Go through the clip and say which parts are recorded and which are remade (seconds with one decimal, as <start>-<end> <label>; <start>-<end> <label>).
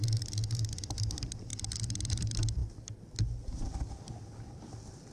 0.0-5.1 recorded